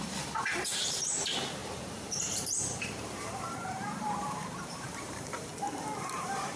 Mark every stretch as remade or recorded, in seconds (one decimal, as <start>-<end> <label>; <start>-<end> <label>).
0.0-1.6 remade; 1.6-2.8 recorded; 2.8-5.5 remade; 5.5-6.0 recorded; 6.0-6.6 remade